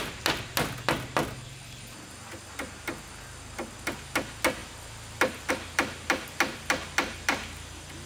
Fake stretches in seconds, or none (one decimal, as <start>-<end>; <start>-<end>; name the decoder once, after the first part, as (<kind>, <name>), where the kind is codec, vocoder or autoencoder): none